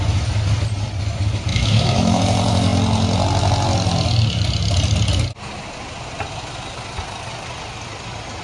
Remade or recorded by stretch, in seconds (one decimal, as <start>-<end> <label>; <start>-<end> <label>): 0.0-1.5 recorded; 1.5-2.2 remade; 2.2-8.4 recorded